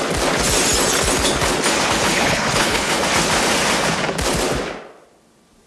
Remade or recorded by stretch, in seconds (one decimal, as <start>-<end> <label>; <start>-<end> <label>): 0.0-2.1 recorded; 2.1-2.9 remade; 2.9-5.7 recorded